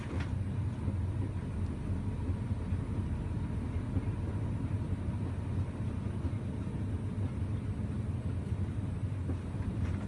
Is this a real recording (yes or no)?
yes